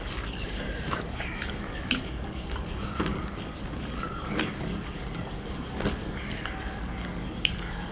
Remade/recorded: remade